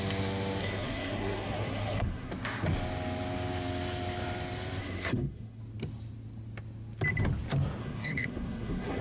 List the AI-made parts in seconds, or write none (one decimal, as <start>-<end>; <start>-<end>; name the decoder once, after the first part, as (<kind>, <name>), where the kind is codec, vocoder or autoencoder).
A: 0.6-2.3 (codec, SNAC); 4.8-5.6; 7.8-9.0